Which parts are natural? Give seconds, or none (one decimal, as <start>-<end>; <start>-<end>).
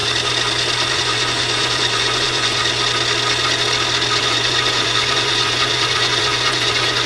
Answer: 0.0-0.9; 2.6-4.2